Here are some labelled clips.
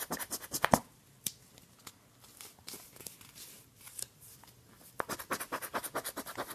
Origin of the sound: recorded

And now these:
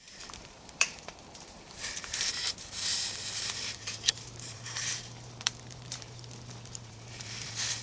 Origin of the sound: remade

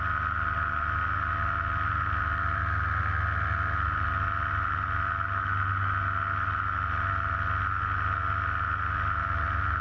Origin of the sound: recorded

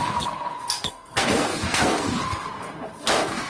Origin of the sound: remade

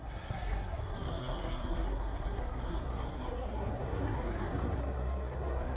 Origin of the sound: remade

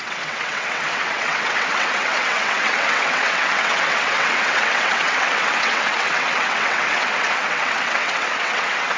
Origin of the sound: remade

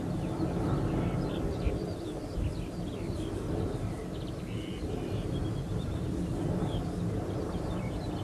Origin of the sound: recorded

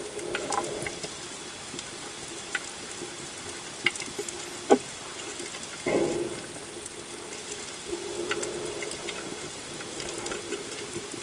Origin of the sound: recorded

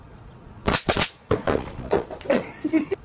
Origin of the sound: remade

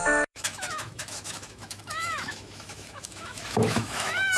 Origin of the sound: remade